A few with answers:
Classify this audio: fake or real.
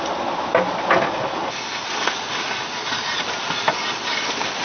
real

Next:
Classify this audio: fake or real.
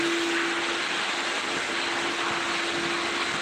real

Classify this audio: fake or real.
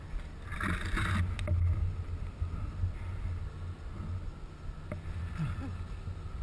real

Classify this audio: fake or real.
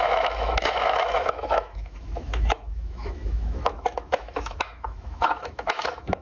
fake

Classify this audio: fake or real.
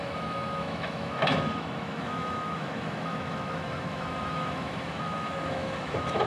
fake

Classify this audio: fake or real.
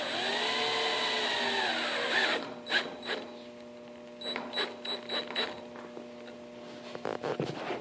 real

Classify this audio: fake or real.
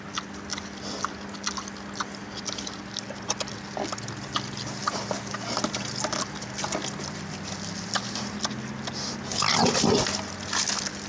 real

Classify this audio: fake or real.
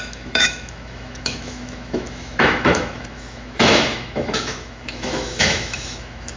fake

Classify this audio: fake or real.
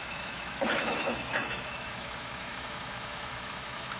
fake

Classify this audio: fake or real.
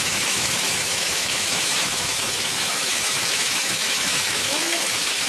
fake